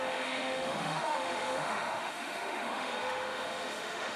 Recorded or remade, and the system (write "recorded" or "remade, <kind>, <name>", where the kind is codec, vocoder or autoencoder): remade, autoencoder, DAC-VAE